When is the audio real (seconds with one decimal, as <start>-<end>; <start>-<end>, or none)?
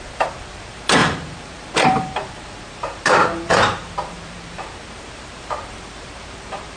none